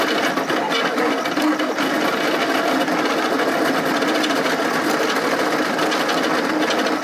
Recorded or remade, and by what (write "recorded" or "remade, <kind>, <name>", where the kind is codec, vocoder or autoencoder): recorded